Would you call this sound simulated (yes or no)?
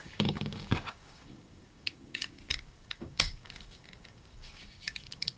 yes